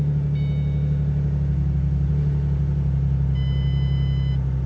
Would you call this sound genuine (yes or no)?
yes